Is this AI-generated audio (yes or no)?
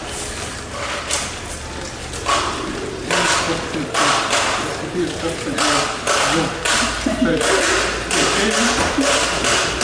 no